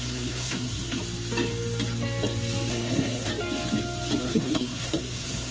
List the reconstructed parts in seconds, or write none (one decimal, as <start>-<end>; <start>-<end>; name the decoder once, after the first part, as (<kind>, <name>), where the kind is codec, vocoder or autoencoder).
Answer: 0.0-1.0 (codec, SNAC); 2.7-3.3; 4.2-5.5